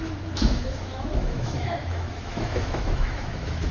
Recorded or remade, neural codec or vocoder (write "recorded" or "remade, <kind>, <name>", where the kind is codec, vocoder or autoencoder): remade, autoencoder, DAC-VAE